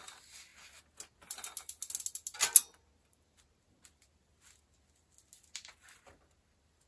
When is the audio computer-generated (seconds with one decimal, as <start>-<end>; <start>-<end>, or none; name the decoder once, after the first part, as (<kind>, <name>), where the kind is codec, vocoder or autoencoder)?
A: none